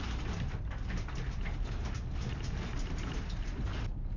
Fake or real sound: real